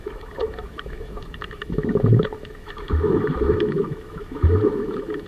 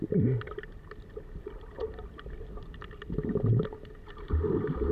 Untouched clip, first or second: second